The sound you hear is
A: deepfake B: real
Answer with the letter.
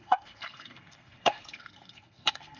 A